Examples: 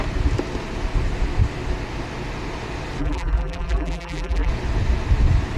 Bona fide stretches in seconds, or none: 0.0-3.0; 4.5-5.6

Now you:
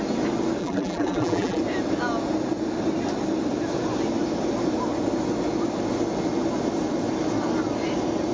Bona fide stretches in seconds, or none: 0.0-0.6; 1.6-8.3

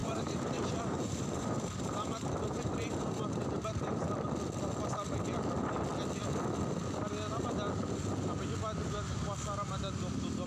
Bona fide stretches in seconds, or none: 4.1-10.5

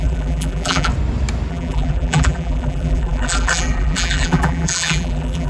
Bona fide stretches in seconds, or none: 0.9-1.5

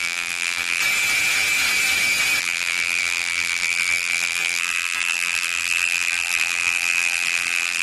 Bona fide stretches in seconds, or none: 0.8-2.4